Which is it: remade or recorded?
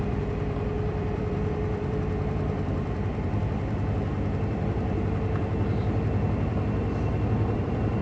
remade